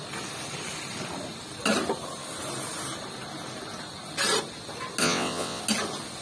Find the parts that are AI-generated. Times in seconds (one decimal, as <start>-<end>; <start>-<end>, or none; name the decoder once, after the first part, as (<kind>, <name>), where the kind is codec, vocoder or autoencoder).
5.0-5.6 (vocoder, WaveNeXt)

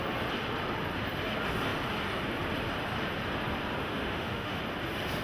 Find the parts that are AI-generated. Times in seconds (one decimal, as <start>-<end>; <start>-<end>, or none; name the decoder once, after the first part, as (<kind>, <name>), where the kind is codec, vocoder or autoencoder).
3.8-4.6 (autoencoder, DAC-VAE)

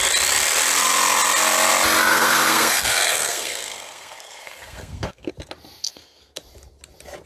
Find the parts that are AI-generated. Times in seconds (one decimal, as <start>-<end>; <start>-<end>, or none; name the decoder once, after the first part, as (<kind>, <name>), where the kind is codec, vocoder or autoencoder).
2.1-5.3 (codec, SNAC); 5.8-6.4

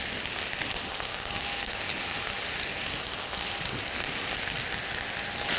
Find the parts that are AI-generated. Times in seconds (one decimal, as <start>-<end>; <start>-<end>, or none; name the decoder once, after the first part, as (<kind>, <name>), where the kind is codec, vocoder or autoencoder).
1.1-2.0 (codec, DAC)

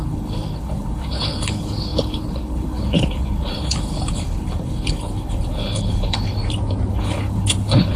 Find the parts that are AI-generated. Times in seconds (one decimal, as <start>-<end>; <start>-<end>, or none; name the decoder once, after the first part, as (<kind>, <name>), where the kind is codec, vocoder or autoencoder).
0.0-6.4 (codec, HILCodec); 6.9-8.0

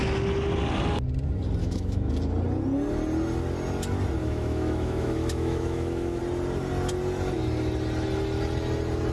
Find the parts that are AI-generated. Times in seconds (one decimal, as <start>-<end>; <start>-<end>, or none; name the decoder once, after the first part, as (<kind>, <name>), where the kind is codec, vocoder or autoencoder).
1.6-2.1 (autoencoder, DAC-VAE); 4.2-6.2

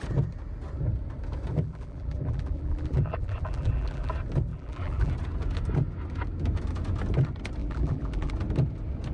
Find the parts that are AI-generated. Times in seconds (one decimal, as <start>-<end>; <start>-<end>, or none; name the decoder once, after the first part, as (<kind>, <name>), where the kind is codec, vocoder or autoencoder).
1.5-4.1 (vocoder, BigVGAN v2); 4.5-5.1; 7.6-8.3